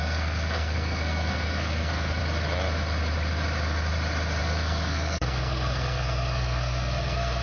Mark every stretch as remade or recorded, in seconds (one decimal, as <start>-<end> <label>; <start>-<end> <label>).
0.0-2.2 remade; 2.2-4.4 recorded; 4.4-7.4 remade